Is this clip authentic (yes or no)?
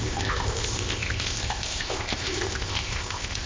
no